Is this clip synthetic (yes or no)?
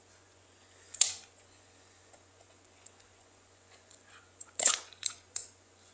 yes